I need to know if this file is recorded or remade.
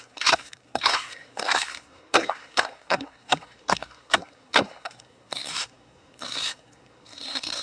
remade